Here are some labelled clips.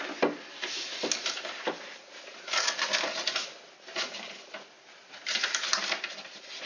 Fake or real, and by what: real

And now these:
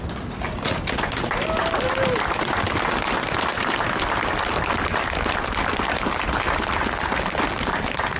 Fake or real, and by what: real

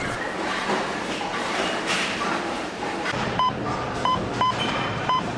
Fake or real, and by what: fake, vocoder, BigVGAN v2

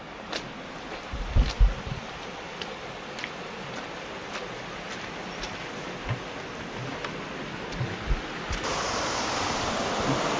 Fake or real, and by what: real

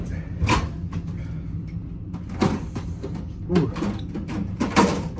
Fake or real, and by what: real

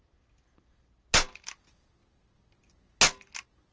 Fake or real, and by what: real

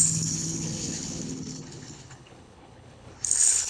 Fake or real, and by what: fake, codec, HILCodec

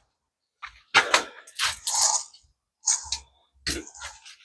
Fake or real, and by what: real